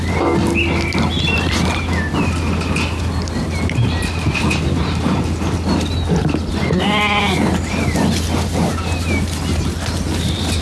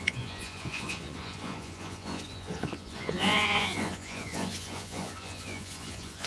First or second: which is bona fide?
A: first